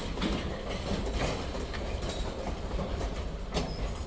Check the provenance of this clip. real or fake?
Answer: real